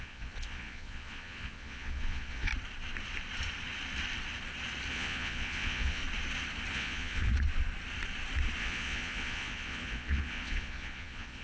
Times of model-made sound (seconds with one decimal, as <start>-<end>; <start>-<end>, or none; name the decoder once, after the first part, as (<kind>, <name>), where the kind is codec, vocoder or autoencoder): 0.0-2.5 (vocoder, Vocos); 4.9-6.0; 6.7-7.3; 8.6-11.4